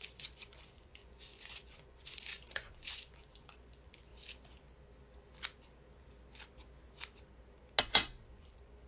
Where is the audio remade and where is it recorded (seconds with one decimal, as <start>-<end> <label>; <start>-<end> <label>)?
0.0-4.1 remade; 4.1-7.8 recorded; 7.8-8.9 remade

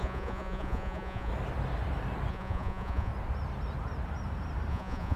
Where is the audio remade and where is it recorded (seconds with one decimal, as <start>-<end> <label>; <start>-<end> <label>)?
0.0-1.3 remade; 1.3-2.3 recorded; 2.3-3.1 remade; 3.1-4.7 recorded; 4.7-5.2 remade

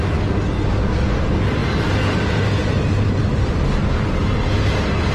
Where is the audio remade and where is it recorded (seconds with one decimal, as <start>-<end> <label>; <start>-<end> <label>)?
0.0-5.1 recorded

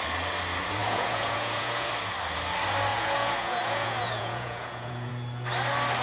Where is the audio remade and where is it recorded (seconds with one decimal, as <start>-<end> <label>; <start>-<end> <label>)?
0.0-0.8 recorded; 0.8-1.9 remade; 1.9-2.9 recorded; 2.9-5.1 remade; 5.1-6.0 recorded

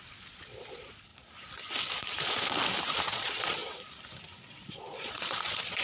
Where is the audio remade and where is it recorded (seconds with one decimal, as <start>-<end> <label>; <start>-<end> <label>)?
0.0-1.1 remade; 1.1-3.0 recorded; 3.0-3.6 remade; 3.6-4.4 recorded; 4.4-5.8 remade

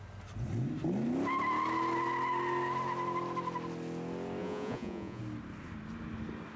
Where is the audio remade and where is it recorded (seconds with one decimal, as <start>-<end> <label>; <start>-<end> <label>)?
0.0-4.4 recorded; 4.4-5.2 remade; 5.2-6.6 recorded

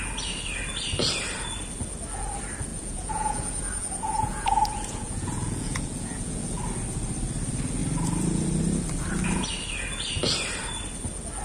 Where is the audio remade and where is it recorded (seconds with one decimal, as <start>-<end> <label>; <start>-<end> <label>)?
0.0-2.7 recorded; 2.7-6.6 remade; 6.6-11.4 recorded

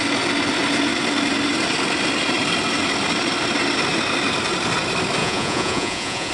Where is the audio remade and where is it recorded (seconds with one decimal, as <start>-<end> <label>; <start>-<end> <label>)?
0.0-5.2 recorded; 5.2-6.3 remade